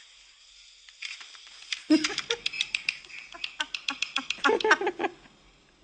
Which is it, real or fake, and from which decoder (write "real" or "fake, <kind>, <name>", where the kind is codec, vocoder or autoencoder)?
real